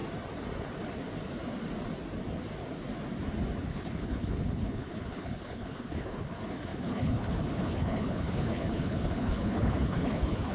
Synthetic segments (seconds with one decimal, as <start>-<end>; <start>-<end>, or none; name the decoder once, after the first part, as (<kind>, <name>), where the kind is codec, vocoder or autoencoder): 3.6-10.5 (codec, HILCodec)